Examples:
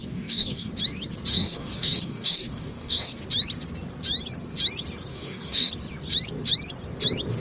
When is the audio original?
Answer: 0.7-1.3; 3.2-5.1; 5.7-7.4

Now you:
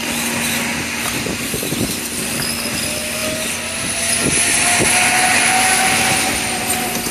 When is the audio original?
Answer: 0.0-7.1